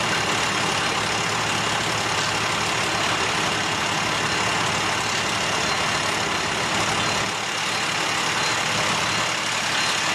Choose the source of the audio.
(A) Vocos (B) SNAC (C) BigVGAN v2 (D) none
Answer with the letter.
D